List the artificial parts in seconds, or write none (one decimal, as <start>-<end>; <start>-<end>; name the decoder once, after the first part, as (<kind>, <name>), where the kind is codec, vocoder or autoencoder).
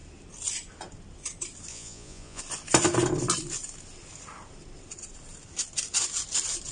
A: 1.7-2.4 (vocoder, Vocos)